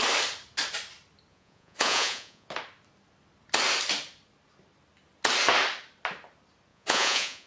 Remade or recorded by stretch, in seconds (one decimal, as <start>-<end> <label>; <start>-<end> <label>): 0.0-1.3 recorded; 1.3-2.5 remade; 2.5-6.7 recorded; 6.7-7.5 remade

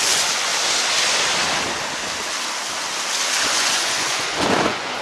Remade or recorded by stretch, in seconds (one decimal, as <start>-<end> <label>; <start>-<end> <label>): 0.0-0.5 remade; 0.5-3.5 recorded; 3.5-5.0 remade

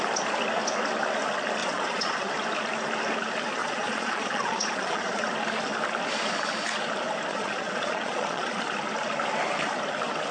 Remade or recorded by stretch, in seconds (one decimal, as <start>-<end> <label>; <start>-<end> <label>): 0.0-1.6 recorded; 1.6-2.3 remade; 2.3-3.6 recorded; 3.6-5.2 remade; 5.2-7.3 recorded; 7.3-8.6 remade; 8.6-10.3 recorded

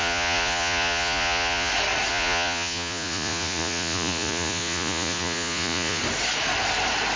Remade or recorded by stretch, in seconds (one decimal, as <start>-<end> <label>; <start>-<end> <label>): 0.0-1.7 remade; 1.7-2.1 recorded; 2.1-6.0 remade; 6.0-7.2 recorded

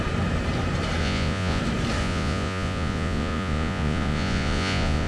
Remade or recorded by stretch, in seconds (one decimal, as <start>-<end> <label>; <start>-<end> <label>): 0.0-1.0 recorded; 1.0-1.6 remade; 1.6-2.0 recorded; 2.0-5.1 remade

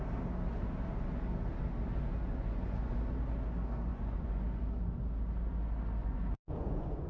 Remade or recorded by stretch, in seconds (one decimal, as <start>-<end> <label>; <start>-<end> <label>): 0.0-2.3 recorded; 2.3-2.9 remade; 2.9-3.9 recorded; 3.9-4.6 remade; 4.6-6.0 recorded; 6.0-7.1 remade

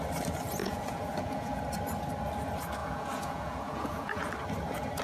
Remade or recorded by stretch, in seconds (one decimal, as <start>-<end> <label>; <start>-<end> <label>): 0.0-0.6 recorded; 0.6-1.6 remade; 1.6-2.8 recorded; 2.8-4.3 remade; 4.3-5.0 recorded